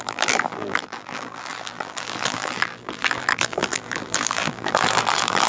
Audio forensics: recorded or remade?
remade